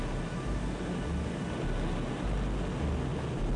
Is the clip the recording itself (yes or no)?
yes